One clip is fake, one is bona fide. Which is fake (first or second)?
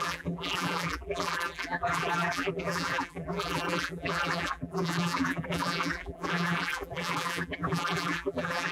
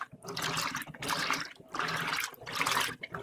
first